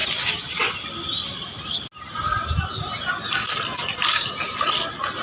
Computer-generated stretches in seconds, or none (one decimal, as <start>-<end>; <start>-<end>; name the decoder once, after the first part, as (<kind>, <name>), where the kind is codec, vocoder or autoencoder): none